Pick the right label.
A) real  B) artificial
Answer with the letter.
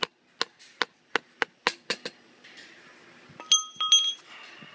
A